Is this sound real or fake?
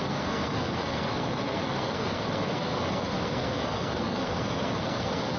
fake